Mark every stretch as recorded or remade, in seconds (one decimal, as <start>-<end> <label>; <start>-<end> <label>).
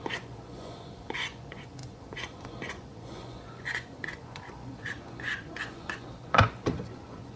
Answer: 0.0-7.4 remade